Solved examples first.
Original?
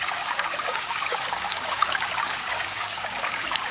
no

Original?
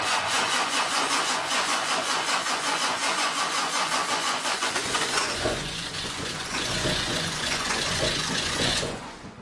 no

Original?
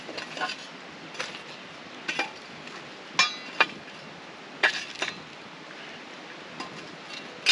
yes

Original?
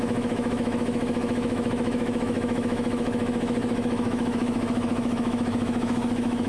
no